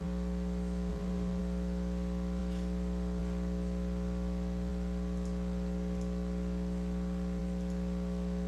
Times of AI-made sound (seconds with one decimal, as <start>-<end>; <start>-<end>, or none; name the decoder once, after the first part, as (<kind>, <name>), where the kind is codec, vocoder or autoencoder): 0.9-1.4 (vocoder, BigVGAN v2)